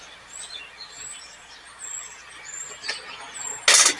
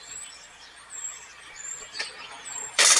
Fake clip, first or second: second